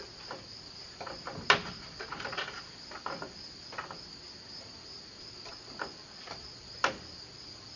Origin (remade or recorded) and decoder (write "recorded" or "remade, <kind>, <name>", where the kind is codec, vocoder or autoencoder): recorded